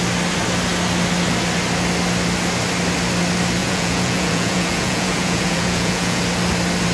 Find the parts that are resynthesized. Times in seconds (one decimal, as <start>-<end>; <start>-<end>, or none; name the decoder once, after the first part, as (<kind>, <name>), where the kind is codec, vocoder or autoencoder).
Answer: 3.6-6.2 (vocoder, Vocos)

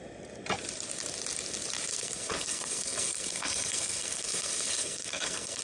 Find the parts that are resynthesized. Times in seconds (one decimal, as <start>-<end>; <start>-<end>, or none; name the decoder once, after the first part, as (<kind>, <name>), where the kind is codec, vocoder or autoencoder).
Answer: 1.9-5.6 (codec, SNAC)